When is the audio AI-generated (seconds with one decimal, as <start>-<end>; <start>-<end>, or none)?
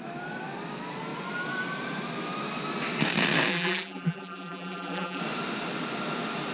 3.5-5.2